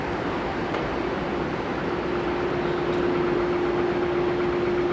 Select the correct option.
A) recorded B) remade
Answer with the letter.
A